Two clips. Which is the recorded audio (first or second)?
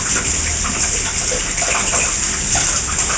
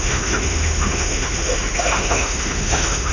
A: first